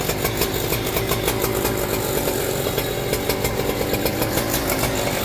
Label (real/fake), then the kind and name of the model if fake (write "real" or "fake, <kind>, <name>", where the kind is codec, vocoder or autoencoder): real